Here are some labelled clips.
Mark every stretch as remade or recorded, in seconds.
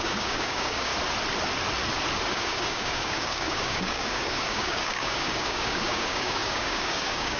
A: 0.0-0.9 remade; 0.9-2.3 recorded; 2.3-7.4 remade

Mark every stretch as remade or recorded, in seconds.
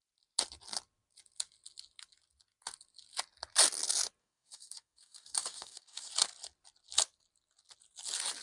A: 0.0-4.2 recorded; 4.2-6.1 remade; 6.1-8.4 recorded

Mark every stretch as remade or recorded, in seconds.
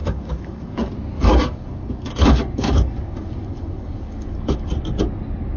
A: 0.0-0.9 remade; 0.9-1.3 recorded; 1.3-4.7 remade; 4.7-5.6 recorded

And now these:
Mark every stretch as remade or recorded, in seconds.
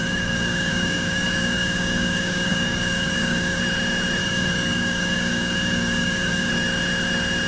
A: 0.0-3.6 remade; 3.6-4.2 recorded; 4.2-6.5 remade; 6.5-7.5 recorded